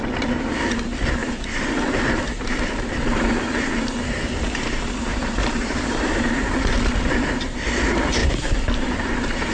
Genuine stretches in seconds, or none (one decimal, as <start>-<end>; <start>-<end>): 0.0-1.2; 2.0-5.1; 6.2-8.2

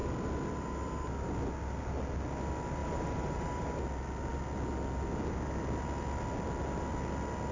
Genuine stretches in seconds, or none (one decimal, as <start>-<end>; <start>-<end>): 0.0-2.8; 3.8-7.5

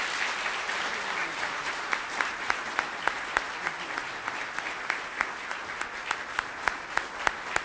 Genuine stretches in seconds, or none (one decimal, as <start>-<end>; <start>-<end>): 0.0-1.2; 3.5-7.6

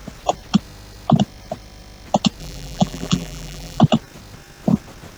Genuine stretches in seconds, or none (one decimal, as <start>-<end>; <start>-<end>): 0.0-2.4; 3.8-5.2

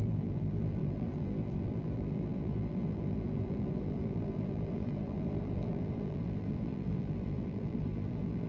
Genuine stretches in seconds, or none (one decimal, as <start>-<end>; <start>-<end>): none